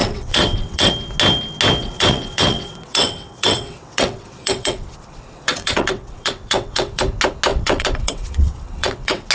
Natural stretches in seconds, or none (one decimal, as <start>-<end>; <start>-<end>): 0.9-1.8; 7.0-7.5